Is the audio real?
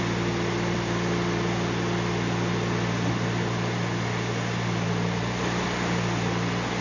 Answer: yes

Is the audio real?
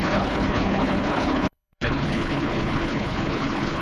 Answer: no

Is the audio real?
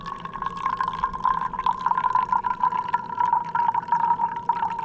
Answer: yes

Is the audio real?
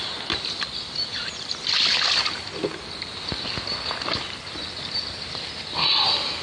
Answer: yes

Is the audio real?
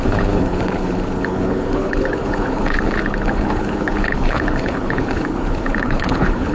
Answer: no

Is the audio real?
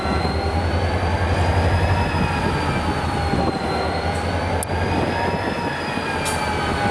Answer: yes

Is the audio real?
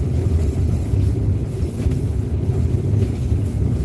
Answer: no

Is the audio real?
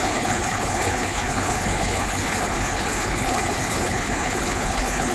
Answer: no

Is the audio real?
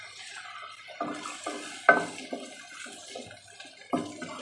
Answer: yes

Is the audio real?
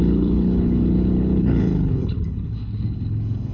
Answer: no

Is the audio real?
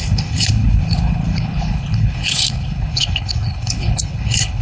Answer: no